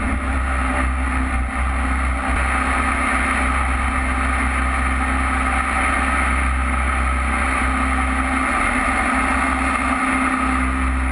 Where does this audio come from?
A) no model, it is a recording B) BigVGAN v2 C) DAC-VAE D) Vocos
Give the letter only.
A